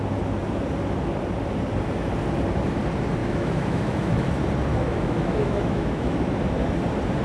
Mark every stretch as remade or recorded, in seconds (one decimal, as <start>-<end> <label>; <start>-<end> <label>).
0.0-3.2 recorded; 3.2-4.3 remade; 4.3-4.7 recorded; 4.7-6.2 remade; 6.2-7.2 recorded